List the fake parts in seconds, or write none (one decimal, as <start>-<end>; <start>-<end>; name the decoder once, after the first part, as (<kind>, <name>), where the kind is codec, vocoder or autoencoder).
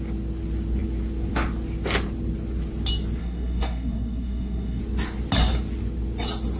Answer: 3.2-4.8 (codec, SNAC)